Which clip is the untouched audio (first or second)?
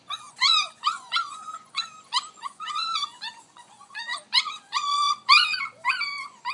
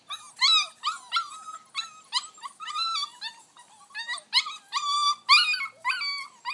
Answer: second